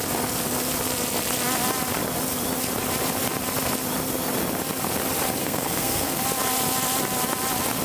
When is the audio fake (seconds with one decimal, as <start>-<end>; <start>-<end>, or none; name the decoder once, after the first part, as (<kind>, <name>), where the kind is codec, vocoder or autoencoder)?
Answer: 5.4-6.2 (codec, SNAC)